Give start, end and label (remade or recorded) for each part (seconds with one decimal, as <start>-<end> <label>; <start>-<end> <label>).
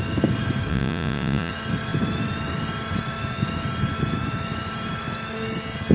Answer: 0.0-0.7 recorded; 0.7-1.5 remade; 1.5-5.9 recorded